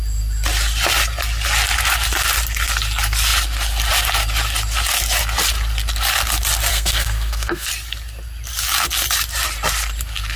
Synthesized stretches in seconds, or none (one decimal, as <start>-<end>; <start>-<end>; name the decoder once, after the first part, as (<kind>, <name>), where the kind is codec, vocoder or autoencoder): 6.7-7.7 (codec, SNAC)